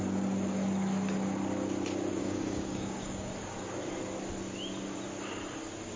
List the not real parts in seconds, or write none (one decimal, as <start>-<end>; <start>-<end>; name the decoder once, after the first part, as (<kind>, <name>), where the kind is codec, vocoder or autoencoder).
2.2-3.3 (codec, DAC)